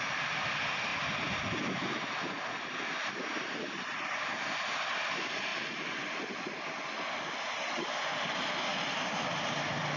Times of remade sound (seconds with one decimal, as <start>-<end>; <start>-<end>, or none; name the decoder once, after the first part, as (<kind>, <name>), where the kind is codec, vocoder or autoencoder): none